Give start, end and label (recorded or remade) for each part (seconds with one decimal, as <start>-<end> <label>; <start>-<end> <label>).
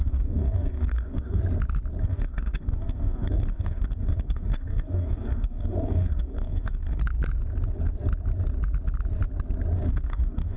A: 0.0-1.4 remade; 1.4-2.0 recorded; 2.0-7.0 remade; 7.0-9.9 recorded; 9.9-10.6 remade